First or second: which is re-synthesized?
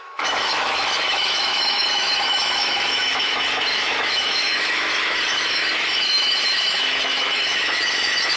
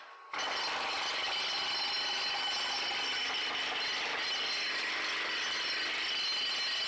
first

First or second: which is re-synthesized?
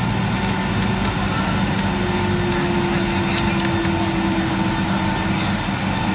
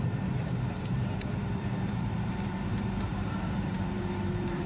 second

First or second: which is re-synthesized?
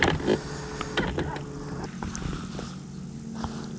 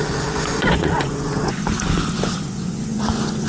second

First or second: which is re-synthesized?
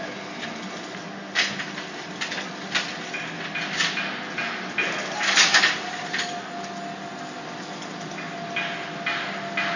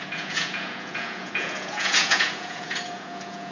second